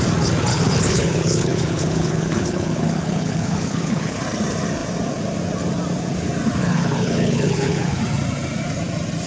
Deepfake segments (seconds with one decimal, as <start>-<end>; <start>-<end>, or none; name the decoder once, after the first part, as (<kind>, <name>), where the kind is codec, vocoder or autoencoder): 0.5-4.2 (codec, HILCodec); 6.6-8.0